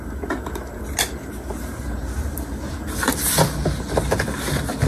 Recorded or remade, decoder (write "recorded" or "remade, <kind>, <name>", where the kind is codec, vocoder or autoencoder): recorded